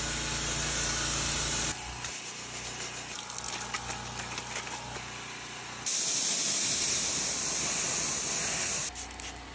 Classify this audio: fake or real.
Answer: real